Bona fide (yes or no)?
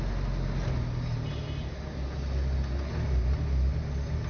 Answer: yes